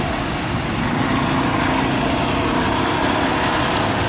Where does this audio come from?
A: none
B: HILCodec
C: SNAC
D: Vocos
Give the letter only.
A